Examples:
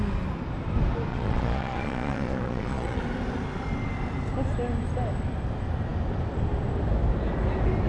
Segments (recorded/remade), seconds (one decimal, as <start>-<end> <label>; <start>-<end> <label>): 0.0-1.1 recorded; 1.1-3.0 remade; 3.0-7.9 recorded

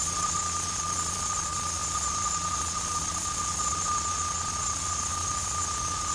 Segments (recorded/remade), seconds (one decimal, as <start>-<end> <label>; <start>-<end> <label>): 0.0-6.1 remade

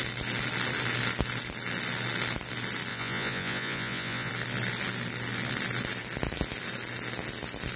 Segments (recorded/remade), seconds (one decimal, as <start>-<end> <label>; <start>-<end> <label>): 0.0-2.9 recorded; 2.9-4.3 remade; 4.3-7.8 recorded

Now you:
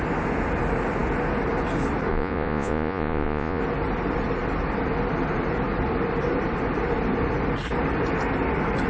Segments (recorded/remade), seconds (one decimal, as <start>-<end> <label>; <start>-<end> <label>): 0.0-2.1 recorded; 2.1-3.6 remade; 3.6-8.9 recorded

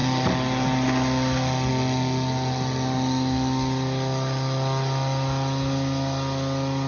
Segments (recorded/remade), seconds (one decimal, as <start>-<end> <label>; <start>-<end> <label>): 0.0-6.9 recorded

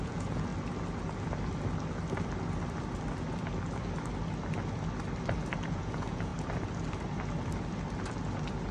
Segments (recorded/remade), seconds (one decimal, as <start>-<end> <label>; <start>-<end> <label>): 0.0-0.5 remade; 0.5-5.7 recorded; 5.7-6.3 remade; 6.3-8.7 recorded

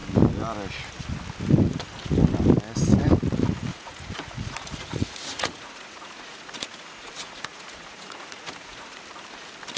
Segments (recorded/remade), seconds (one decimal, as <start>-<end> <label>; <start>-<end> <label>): 0.0-3.7 recorded; 3.7-9.0 remade; 9.0-9.8 recorded